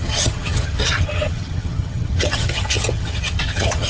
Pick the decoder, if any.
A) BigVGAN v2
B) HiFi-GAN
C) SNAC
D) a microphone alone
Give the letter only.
B